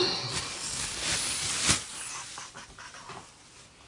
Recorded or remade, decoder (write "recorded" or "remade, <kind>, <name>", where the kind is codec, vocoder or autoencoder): recorded